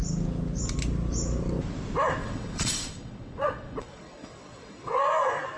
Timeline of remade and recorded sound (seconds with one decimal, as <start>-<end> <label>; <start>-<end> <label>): 0.0-2.2 recorded; 2.2-5.0 remade; 5.0-5.6 recorded